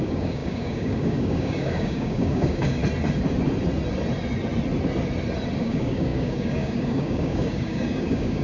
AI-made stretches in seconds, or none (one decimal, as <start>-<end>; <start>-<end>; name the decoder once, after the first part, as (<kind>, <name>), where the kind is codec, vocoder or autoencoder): 0.0-2.8 (codec, DAC); 5.6-8.4